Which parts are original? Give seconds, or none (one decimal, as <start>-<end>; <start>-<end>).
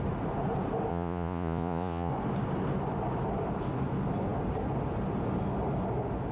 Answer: 0.0-0.9; 2.1-6.3